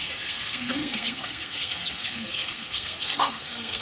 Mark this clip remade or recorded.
remade